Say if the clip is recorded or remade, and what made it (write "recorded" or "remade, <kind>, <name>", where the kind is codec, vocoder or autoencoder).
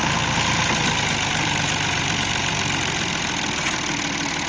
recorded